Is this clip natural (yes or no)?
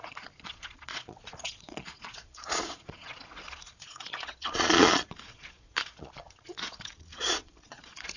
no